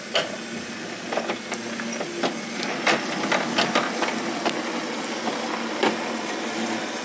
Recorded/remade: recorded